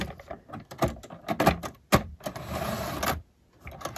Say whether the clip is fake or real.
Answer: real